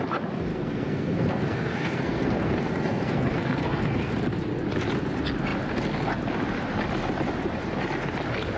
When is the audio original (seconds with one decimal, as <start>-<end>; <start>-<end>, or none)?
0.0-0.5; 4.1-8.6